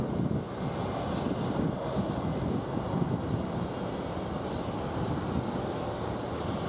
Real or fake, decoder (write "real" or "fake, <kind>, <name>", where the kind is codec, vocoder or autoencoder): real